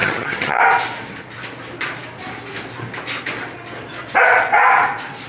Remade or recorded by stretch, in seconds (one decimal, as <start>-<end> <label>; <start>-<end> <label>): 0.0-0.6 remade; 0.6-5.3 recorded